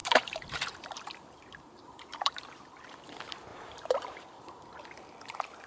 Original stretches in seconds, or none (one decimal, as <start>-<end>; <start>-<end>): 2.5-3.5; 4.3-5.7